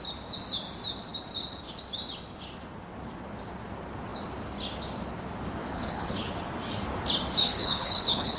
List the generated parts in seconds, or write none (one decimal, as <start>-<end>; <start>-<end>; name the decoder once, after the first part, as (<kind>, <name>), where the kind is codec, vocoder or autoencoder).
5.6-6.3 (codec, HILCodec); 7.4-8.4